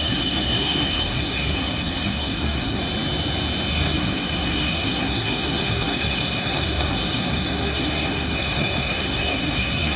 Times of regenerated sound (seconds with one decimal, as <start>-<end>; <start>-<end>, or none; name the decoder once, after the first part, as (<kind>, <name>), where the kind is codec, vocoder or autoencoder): 0.0-2.8 (codec, SNAC); 3.7-10.0